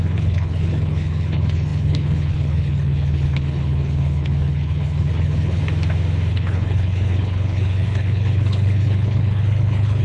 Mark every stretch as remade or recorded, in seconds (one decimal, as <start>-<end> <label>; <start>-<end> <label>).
0.0-5.6 remade; 5.6-6.3 recorded; 6.3-10.0 remade